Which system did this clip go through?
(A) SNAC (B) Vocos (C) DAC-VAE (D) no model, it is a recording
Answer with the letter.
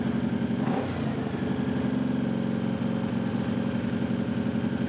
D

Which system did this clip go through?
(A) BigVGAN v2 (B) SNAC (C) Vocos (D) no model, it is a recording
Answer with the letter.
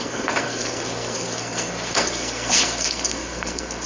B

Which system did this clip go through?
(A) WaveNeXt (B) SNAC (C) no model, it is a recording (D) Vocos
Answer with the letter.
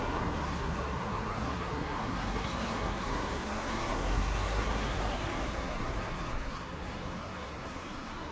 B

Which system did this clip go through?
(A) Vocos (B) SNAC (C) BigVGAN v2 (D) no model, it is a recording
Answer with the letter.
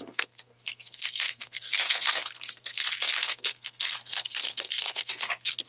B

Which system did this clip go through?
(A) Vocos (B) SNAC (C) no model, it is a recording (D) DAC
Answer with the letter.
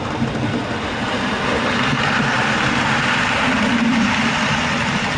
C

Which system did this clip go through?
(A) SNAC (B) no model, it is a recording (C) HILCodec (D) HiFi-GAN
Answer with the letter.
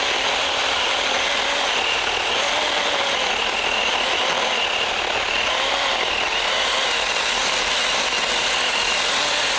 B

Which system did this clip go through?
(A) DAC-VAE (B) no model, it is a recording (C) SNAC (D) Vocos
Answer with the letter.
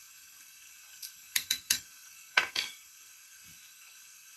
C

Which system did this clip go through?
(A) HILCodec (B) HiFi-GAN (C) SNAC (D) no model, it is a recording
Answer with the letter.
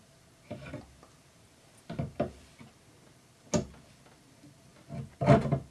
D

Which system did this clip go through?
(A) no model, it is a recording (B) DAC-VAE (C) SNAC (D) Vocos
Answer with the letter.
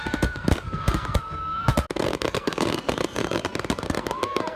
C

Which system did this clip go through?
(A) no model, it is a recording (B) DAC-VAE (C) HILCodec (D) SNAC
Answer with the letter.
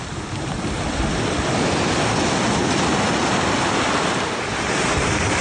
A